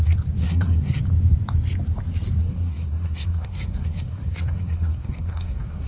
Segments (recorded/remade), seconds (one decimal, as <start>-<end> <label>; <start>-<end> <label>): 0.0-0.4 recorded; 0.4-1.0 remade; 1.0-2.4 recorded; 2.4-5.9 remade